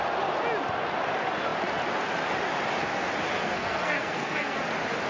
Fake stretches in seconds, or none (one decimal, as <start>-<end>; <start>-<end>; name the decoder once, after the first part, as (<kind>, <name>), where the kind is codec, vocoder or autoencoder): 3.4-4.6 (codec, SNAC)